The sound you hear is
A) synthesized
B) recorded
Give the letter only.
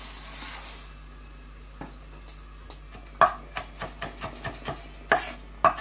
B